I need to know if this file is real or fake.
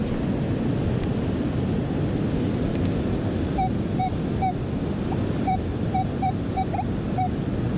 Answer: real